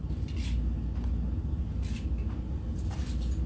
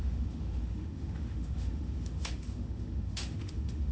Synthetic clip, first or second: second